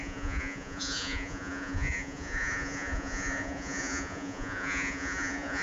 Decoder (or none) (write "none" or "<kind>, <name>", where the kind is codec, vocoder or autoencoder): vocoder, Vocos